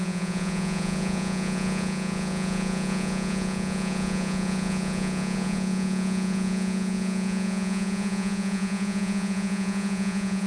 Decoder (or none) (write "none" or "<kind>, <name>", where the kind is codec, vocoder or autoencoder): vocoder, Vocos